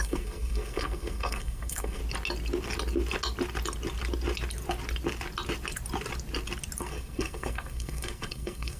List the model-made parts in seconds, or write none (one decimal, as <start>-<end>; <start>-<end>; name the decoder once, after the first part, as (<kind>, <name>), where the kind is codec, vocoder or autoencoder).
0.0-2.0 (codec, SNAC); 6.8-8.8